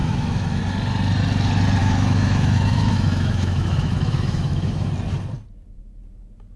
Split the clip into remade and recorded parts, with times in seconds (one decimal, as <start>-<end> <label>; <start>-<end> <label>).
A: 0.0-0.6 remade; 0.6-1.8 recorded; 1.8-4.9 remade; 4.9-6.6 recorded